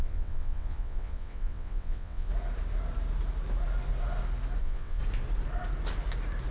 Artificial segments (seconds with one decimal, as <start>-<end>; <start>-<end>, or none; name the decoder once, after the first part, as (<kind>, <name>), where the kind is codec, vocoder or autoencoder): 0.0-2.3 (vocoder, WaveNeXt); 4.6-5.0